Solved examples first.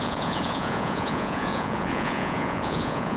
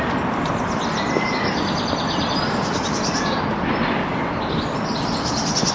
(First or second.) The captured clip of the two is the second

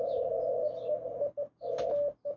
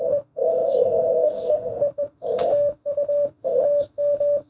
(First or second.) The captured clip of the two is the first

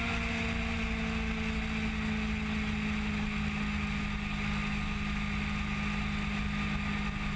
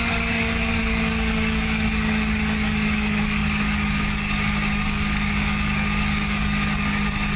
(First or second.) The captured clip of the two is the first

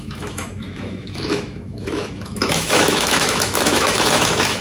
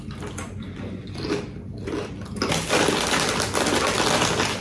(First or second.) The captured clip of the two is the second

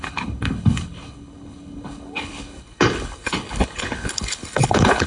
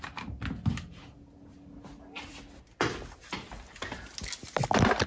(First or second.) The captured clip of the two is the second